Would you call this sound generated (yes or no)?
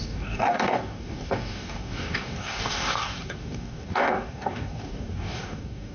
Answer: yes